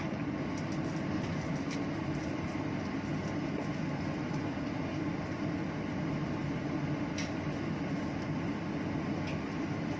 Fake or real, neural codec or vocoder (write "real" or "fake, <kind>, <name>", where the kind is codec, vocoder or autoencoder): real